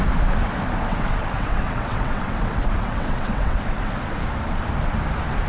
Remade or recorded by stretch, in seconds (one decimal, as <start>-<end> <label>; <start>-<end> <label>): 0.0-0.9 recorded; 0.9-4.2 remade; 4.2-5.5 recorded